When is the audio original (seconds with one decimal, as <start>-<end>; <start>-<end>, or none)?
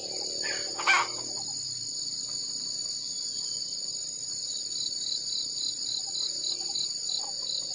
0.7-2.4; 7.0-7.7